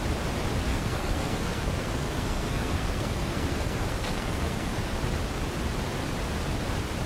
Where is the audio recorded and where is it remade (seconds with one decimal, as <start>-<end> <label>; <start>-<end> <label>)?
0.0-0.7 recorded; 0.7-5.0 remade; 5.0-7.1 recorded